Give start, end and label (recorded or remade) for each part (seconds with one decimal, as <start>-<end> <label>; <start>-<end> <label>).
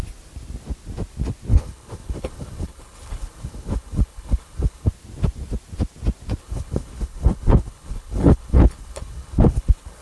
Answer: 0.0-1.5 recorded; 1.5-4.9 remade; 4.9-6.4 recorded; 6.4-10.0 remade